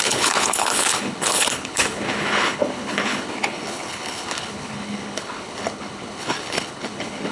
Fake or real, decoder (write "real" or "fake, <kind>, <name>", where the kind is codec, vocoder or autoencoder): fake, codec, HILCodec